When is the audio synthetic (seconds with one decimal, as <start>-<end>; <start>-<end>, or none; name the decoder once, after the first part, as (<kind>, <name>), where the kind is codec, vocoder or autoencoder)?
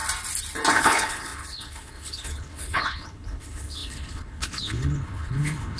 0.7-5.8 (codec, HILCodec)